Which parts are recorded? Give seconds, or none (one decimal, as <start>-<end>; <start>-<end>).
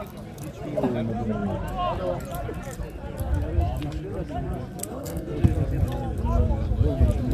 0.0-4.9; 5.4-7.3